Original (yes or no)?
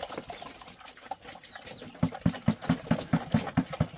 yes